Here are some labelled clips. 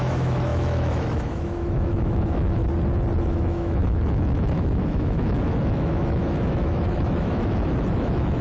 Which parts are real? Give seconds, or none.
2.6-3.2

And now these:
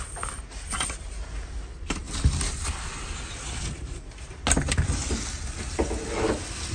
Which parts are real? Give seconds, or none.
0.0-6.7

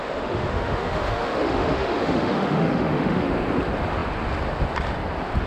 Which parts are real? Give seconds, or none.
3.3-5.5

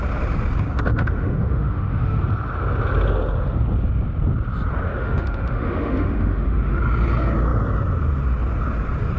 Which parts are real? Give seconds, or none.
0.0-0.9; 2.2-5.0; 6.8-9.2

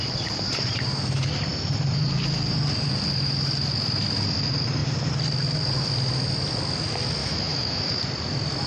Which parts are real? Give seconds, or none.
0.0-7.2; 8.0-8.7

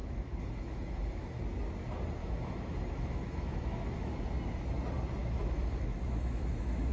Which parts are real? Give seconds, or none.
1.4-2.2; 4.1-5.2

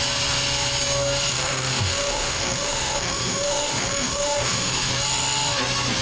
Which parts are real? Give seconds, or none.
0.0-1.3; 4.9-6.0